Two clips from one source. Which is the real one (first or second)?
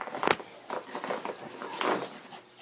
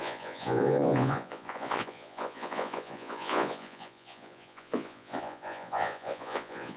first